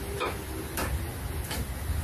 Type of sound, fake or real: real